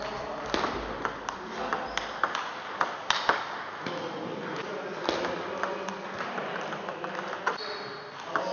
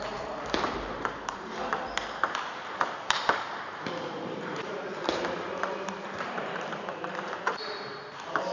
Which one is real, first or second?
first